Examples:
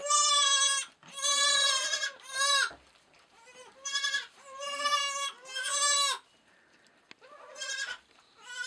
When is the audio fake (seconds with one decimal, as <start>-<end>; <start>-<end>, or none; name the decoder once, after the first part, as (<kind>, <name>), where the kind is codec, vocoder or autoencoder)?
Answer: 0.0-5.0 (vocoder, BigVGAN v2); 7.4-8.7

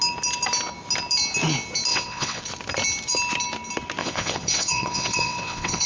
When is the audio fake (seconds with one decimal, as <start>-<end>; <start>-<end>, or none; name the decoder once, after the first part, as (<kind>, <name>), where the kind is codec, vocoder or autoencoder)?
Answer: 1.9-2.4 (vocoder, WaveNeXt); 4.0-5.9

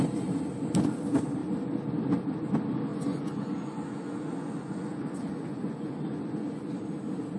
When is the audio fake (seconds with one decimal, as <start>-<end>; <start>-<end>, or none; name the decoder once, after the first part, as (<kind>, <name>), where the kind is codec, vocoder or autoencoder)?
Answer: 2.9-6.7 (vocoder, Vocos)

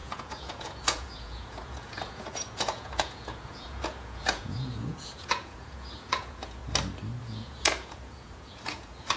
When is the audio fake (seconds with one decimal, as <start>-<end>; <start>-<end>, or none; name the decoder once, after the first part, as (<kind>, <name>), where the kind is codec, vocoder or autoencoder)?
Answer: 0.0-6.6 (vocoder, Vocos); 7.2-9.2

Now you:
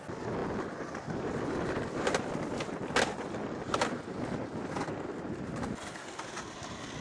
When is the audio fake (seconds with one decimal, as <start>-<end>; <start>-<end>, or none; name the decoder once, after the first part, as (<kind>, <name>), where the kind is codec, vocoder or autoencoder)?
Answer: none

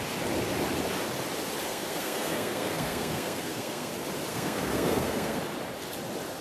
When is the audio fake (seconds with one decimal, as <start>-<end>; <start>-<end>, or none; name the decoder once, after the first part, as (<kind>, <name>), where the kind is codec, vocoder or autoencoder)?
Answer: 1.7-3.9 (codec, SNAC); 4.3-5.4

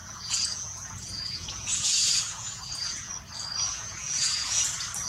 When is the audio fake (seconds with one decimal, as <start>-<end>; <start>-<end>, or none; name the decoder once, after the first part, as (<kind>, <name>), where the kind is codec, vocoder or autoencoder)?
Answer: 0.0-3.1 (vocoder, Vocos); 3.7-4.6